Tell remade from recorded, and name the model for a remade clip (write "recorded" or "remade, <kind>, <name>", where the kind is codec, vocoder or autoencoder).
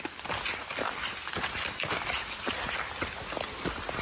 recorded